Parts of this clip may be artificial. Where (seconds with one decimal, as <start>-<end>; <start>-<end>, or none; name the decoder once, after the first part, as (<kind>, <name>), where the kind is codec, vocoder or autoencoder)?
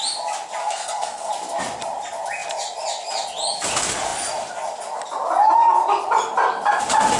0.6-1.3 (codec, SNAC)